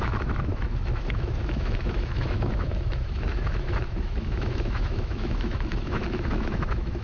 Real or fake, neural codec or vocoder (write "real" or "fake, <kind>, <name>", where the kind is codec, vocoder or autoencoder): fake, autoencoder, DAC-VAE